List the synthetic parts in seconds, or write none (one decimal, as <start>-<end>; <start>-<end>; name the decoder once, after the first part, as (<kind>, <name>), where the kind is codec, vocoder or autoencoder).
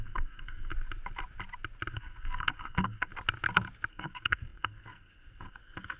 0.0-0.7 (codec, SNAC); 1.9-3.1; 3.9-6.0